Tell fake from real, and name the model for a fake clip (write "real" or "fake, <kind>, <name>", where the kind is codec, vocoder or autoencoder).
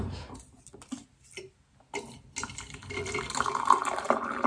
real